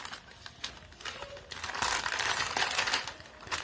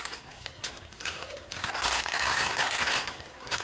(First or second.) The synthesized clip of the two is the second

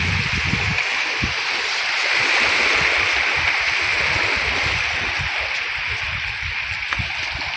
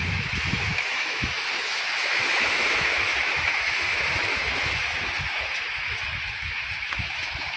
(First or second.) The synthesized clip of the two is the second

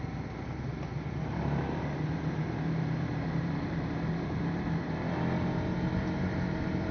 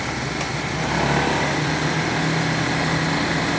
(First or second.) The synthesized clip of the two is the first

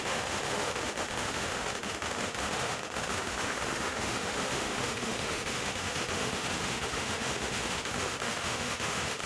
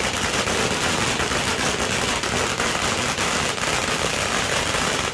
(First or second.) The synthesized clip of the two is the first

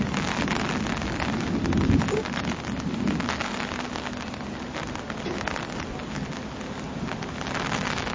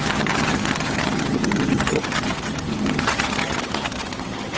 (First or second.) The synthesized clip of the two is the second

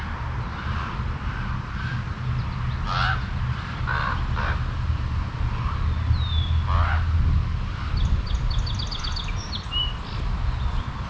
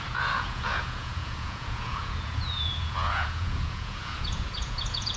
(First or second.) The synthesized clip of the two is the second